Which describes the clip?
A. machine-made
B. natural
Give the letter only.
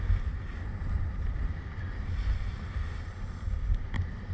B